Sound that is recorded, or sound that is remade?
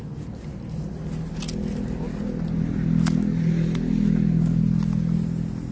recorded